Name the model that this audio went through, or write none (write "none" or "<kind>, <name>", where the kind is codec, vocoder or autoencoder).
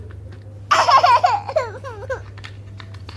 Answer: none